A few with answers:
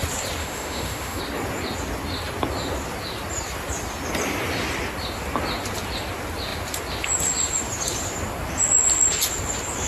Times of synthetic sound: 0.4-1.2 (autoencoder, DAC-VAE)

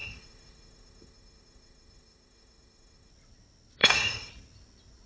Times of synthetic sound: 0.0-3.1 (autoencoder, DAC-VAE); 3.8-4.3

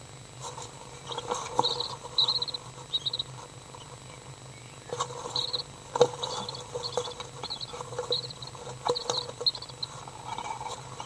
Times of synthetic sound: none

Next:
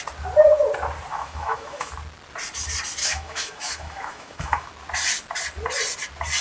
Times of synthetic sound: 1.1-1.9 (autoencoder, DAC-VAE); 3.0-4.7